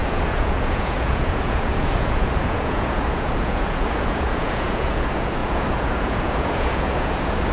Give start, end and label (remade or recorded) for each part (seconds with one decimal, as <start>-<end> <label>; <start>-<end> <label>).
0.0-7.5 remade